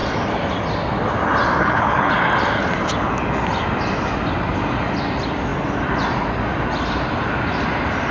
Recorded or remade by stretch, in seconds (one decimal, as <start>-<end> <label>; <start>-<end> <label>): 0.0-1.6 recorded; 1.6-2.1 remade; 2.1-8.1 recorded

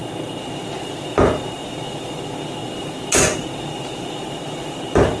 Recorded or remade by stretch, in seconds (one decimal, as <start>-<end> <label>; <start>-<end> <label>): 0.0-5.2 recorded

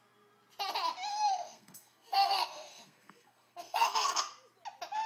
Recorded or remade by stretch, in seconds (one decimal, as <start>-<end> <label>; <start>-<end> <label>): 0.0-1.1 recorded; 1.1-4.2 remade; 4.2-5.1 recorded

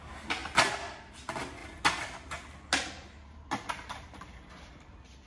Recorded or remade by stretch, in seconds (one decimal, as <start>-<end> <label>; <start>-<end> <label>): 0.0-5.3 recorded

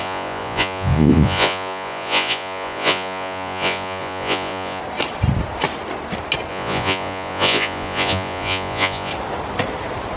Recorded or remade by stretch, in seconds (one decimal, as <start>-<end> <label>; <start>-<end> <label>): 0.0-4.8 remade; 4.8-6.5 recorded; 6.5-9.1 remade; 9.1-10.2 recorded